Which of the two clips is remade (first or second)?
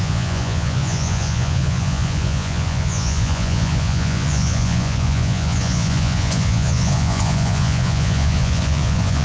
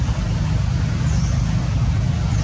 first